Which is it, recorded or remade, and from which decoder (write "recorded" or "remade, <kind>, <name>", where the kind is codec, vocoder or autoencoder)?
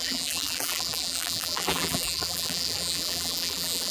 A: remade, vocoder, BigVGAN v2